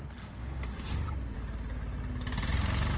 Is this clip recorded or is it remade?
recorded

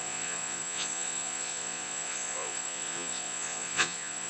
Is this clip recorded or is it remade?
remade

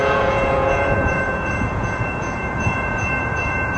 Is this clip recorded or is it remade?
remade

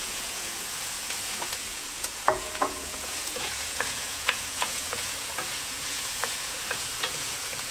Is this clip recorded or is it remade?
remade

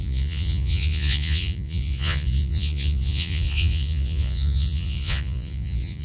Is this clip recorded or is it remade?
remade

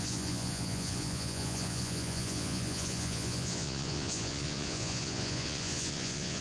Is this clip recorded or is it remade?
remade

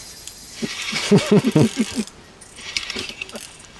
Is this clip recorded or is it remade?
recorded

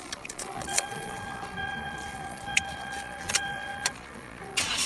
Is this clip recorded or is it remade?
remade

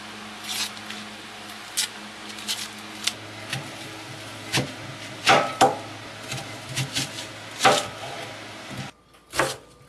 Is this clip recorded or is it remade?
recorded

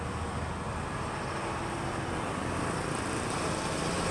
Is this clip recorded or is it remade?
recorded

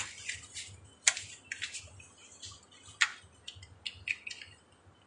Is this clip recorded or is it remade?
recorded